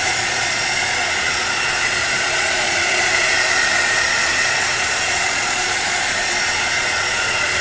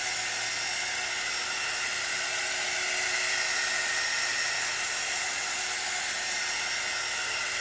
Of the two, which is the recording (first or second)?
second